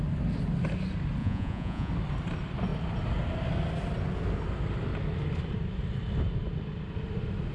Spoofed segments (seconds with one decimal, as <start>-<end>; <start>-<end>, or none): 1.2-1.9